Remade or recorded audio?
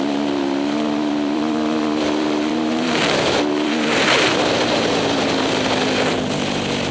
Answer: remade